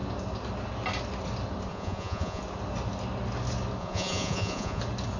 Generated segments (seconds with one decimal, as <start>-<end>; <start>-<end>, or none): 1.7-2.4; 3.8-4.8